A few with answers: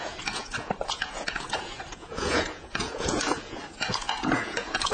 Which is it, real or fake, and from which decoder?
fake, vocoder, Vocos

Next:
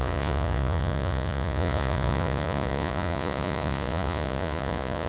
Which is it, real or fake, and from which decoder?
fake, vocoder, Vocos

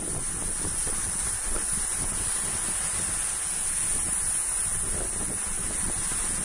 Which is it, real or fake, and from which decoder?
real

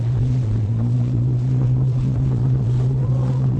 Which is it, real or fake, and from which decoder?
fake, vocoder, Vocos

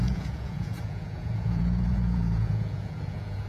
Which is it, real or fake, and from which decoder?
fake, vocoder, Vocos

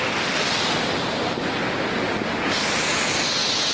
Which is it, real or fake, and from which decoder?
real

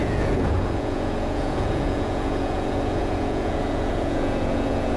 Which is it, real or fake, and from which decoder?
fake, vocoder, Vocos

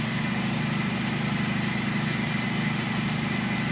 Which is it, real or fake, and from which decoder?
real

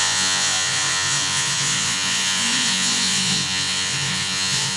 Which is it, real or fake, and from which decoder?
fake, vocoder, Vocos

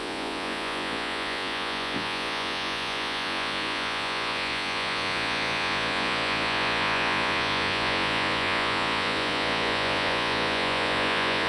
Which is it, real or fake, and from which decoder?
fake, vocoder, Vocos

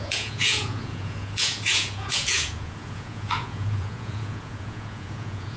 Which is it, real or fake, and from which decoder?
fake, vocoder, Vocos